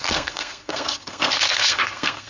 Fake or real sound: fake